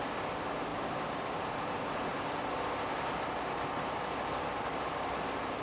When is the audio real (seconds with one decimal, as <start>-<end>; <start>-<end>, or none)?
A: 0.0-5.6